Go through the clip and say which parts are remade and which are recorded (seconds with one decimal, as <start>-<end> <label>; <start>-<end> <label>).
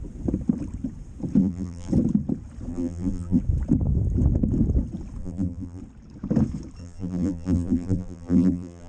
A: 0.0-1.4 recorded; 1.4-1.9 remade; 1.9-2.7 recorded; 2.7-3.4 remade; 3.4-5.2 recorded; 5.2-5.8 remade; 5.8-6.8 recorded; 6.8-8.9 remade